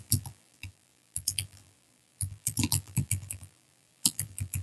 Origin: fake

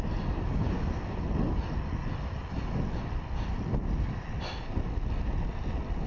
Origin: real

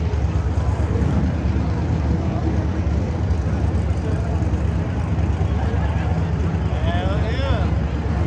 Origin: real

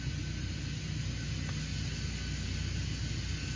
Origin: real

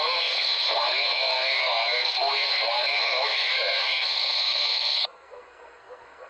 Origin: fake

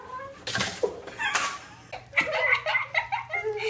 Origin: real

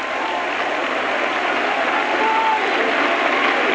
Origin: real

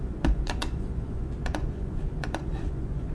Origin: fake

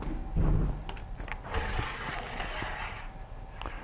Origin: real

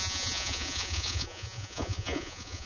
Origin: fake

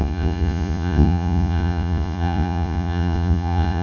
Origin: fake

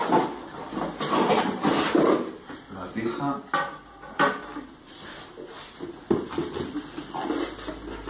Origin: real